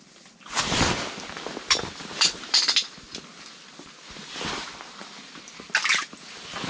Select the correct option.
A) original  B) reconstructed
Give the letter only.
A